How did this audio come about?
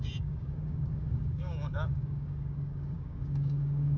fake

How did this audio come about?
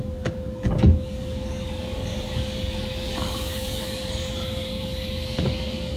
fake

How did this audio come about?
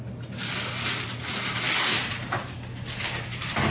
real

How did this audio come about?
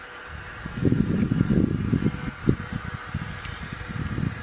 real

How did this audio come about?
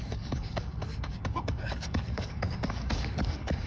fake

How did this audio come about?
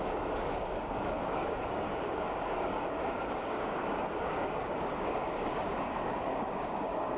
fake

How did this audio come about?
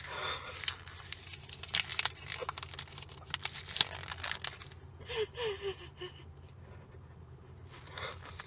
real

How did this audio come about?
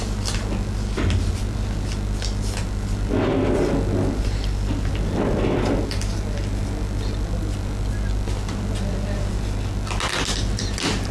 real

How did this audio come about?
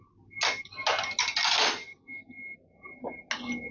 real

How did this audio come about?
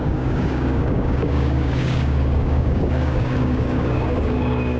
fake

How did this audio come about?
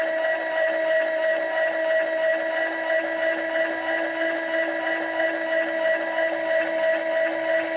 real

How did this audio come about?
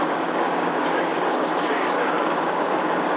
fake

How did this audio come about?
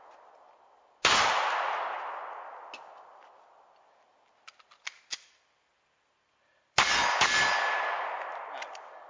real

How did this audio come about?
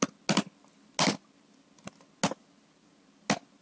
real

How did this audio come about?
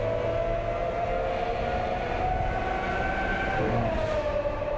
real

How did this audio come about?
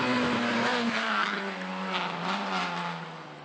real